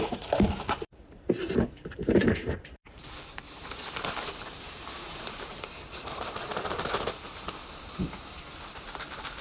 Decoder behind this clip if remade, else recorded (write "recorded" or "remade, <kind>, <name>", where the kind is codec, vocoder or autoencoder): remade, vocoder, BigVGAN v2